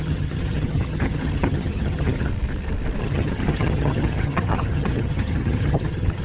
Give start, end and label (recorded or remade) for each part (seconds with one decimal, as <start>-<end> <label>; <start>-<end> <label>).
0.0-2.3 remade; 2.3-3.0 recorded; 3.0-6.2 remade